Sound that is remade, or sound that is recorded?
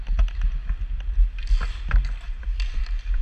recorded